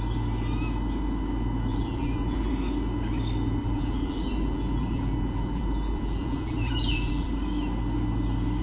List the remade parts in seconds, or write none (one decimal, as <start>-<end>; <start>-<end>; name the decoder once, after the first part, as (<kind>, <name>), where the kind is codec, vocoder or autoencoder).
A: 1.7-2.5 (vocoder, BigVGAN v2); 3.6-7.3